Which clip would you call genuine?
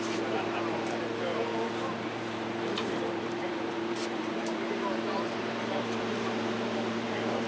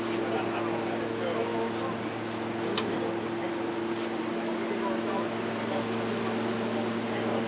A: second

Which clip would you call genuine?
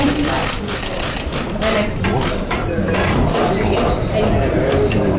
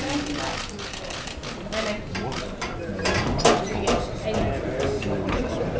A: second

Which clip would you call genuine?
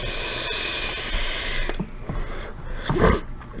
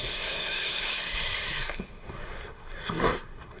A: first